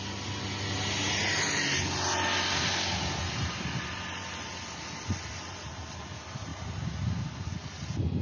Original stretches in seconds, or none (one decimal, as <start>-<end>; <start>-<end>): 0.0-8.2